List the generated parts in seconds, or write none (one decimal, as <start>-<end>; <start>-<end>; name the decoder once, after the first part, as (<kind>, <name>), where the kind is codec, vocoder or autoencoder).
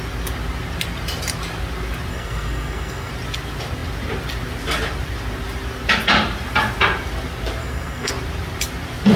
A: 2.1-3.1 (codec, SNAC); 7.6-8.1